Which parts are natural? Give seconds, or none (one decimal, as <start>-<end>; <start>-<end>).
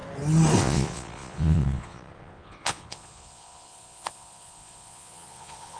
0.0-0.6